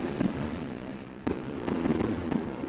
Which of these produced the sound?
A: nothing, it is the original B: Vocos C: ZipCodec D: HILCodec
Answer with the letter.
B